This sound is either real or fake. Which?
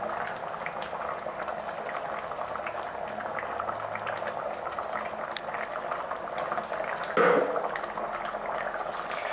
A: real